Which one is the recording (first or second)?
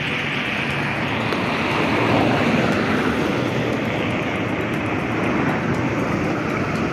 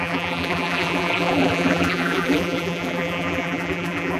first